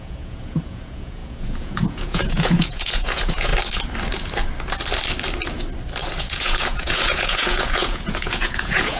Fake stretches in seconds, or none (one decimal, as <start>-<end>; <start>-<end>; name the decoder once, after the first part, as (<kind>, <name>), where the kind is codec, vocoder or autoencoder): 0.0-3.5 (vocoder, Vocos); 6.2-9.0